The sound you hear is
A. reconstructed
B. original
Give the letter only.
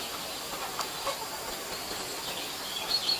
B